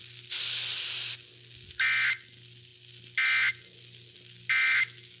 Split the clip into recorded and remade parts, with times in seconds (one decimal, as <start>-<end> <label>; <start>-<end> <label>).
0.0-5.2 recorded